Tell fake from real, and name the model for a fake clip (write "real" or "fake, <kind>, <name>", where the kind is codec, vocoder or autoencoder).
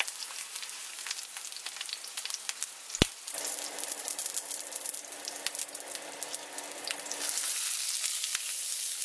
real